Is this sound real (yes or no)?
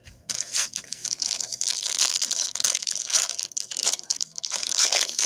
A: no